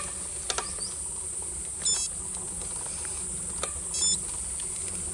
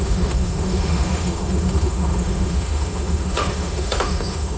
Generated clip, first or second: second